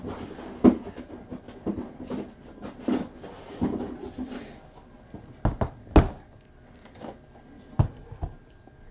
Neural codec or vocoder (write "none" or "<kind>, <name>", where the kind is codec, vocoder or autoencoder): none